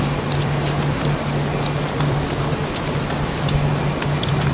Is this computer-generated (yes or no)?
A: no